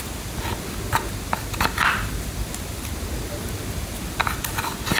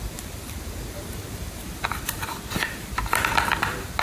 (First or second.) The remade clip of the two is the second